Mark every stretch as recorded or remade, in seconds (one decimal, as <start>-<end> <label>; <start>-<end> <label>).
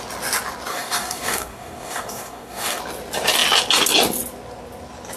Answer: 0.0-0.7 recorded; 0.7-2.8 remade; 2.8-5.2 recorded